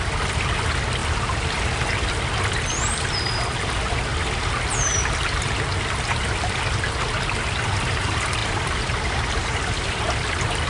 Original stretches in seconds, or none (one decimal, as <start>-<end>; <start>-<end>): 0.0-1.0; 2.1-10.7